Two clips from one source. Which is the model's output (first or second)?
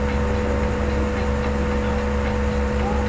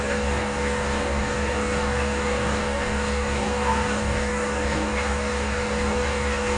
second